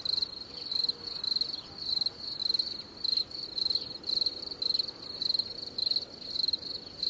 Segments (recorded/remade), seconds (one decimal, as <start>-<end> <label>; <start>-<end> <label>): 0.0-7.1 recorded